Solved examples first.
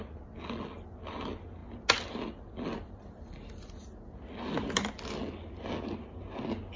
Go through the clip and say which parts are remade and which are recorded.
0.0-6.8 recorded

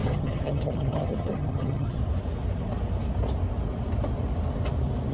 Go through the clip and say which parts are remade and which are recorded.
0.0-2.0 remade; 2.0-5.1 recorded

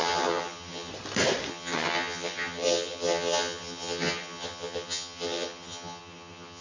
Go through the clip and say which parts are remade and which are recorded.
0.0-0.9 remade; 0.9-1.5 recorded; 1.5-6.6 remade

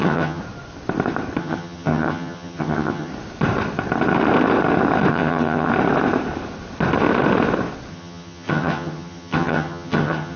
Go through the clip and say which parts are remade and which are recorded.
0.0-0.4 remade; 0.4-1.4 recorded; 1.4-3.1 remade; 3.1-5.1 recorded; 5.1-5.7 remade; 5.7-7.9 recorded; 7.9-10.4 remade

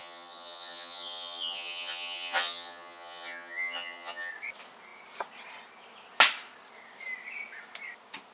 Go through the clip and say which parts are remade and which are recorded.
0.0-4.3 remade; 4.3-8.3 recorded